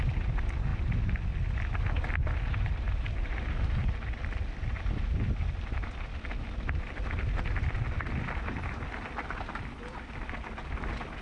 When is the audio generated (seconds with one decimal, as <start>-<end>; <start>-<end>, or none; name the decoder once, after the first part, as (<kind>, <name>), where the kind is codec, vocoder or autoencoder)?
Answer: none